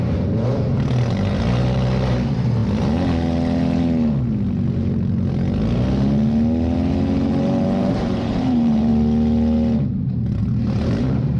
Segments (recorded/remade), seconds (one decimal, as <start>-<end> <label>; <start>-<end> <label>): 0.0-2.6 remade; 2.6-7.8 recorded; 7.8-8.9 remade; 8.9-10.4 recorded; 10.4-11.4 remade